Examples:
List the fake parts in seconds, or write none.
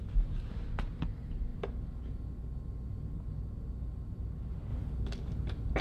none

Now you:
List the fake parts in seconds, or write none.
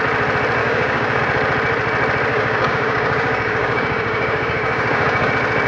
0.6-1.2 (codec, DAC); 2.3-5.3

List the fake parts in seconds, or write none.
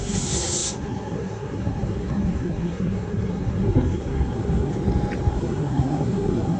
0.0-4.7 (codec, SNAC); 5.3-6.6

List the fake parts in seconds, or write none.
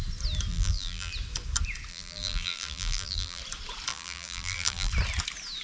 0.5-1.1 (vocoder, BigVGAN v2); 1.9-3.4; 3.9-4.9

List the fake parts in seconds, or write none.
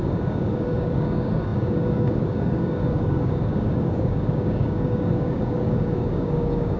0.0-6.8 (codec, DAC)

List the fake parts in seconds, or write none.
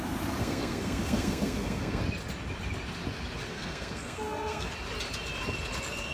0.4-2.0 (codec, SNAC); 3.5-4.7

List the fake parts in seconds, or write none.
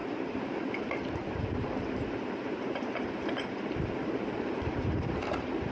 0.0-5.7 (vocoder, BigVGAN v2)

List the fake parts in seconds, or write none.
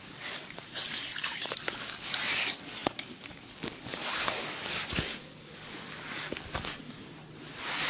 0.0-6.8 (codec, DAC)